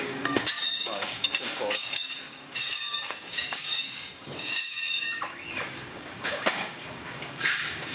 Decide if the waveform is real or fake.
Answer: fake